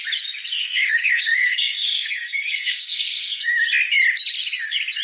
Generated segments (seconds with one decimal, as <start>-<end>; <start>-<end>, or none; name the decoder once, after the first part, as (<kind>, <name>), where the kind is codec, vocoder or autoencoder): 0.6-3.6 (codec, SNAC)